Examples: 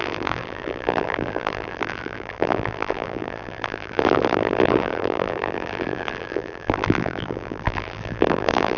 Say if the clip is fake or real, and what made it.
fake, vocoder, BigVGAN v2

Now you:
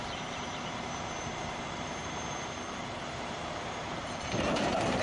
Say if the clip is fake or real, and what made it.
fake, vocoder, BigVGAN v2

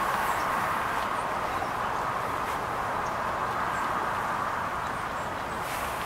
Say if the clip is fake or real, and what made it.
real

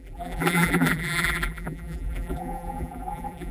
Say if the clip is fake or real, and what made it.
fake, vocoder, BigVGAN v2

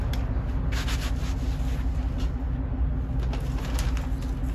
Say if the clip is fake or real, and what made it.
real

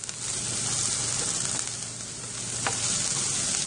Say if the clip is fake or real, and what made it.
real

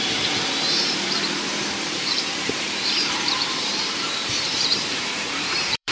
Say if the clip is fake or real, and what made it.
fake, vocoder, BigVGAN v2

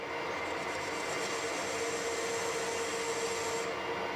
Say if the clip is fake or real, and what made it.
real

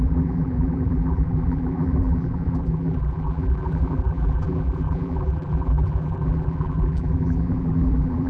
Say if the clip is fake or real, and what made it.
fake, vocoder, BigVGAN v2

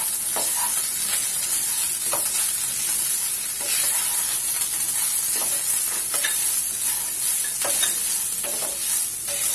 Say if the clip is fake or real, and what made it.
real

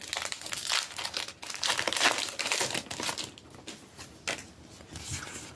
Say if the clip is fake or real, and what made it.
real